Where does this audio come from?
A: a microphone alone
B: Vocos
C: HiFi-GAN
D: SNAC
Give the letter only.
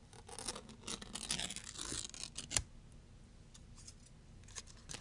A